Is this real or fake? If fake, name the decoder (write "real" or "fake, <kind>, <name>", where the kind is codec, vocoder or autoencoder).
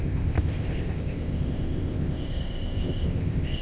fake, codec, ZipCodec